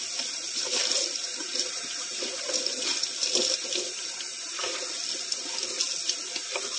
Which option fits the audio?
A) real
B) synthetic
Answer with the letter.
A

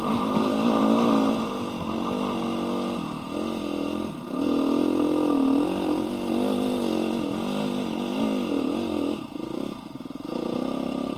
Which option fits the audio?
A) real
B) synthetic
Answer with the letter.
A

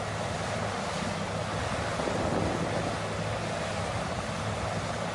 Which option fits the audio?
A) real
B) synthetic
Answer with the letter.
A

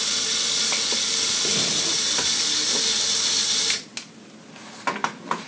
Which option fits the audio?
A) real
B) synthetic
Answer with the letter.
A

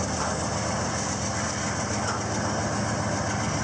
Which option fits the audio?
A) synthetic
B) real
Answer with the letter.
B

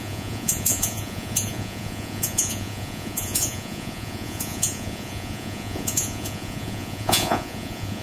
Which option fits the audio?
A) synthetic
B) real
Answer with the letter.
A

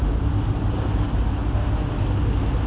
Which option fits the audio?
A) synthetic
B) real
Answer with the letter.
B